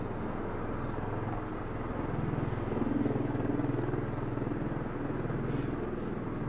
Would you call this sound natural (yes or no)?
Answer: yes